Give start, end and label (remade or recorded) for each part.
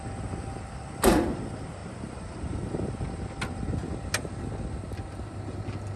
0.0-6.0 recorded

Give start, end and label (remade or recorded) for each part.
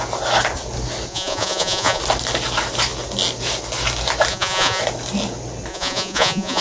0.0-1.1 recorded; 1.1-2.0 remade; 2.0-4.3 recorded; 4.3-4.8 remade; 4.8-5.7 recorded; 5.7-6.6 remade